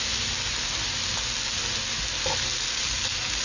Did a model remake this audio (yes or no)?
no